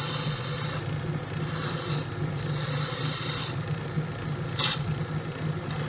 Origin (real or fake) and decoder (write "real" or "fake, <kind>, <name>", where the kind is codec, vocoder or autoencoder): real